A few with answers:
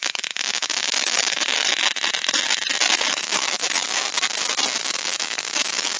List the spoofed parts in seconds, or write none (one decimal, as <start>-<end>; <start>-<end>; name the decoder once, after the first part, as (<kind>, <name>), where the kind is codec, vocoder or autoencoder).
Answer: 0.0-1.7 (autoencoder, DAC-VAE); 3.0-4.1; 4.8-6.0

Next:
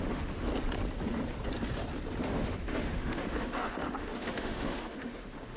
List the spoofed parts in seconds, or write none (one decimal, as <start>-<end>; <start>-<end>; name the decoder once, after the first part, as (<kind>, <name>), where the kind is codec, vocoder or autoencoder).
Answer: 0.0-0.5 (autoencoder, DAC-VAE); 2.2-5.6

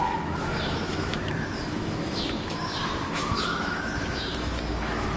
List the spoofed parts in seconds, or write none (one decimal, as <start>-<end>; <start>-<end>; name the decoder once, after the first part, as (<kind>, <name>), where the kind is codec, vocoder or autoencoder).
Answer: 0.0-5.2 (autoencoder, DAC-VAE)

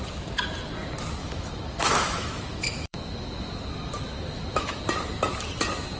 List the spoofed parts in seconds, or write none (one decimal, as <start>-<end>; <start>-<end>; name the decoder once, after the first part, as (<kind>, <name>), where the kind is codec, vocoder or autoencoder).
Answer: 1.2-4.8 (autoencoder, DAC-VAE)

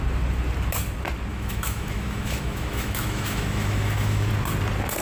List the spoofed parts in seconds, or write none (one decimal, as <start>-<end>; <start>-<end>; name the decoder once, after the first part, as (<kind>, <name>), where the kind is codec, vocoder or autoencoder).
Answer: 1.3-4.3 (autoencoder, DAC-VAE)